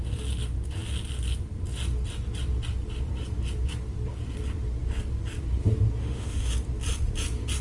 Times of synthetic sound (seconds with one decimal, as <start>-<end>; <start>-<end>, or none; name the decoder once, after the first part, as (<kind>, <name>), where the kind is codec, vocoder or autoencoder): 6.0-6.5 (autoencoder, DAC-VAE)